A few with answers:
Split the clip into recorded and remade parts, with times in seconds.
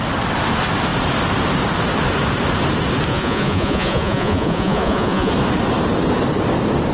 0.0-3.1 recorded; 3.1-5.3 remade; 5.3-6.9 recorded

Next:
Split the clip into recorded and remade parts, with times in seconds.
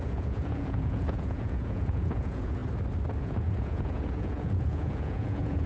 0.0-2.6 remade; 2.6-3.2 recorded; 3.2-5.7 remade